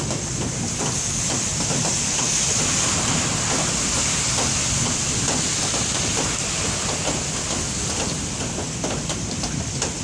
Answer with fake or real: real